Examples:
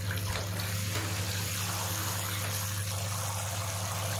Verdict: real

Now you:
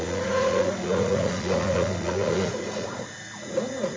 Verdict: fake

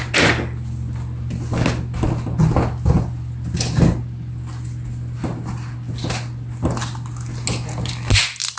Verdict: real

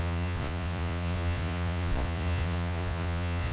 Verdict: fake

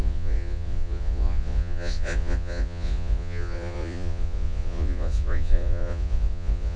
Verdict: fake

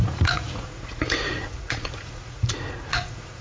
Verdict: fake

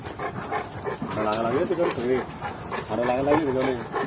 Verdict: real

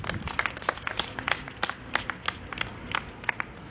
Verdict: real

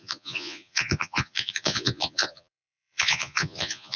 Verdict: fake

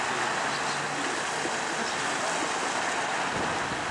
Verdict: real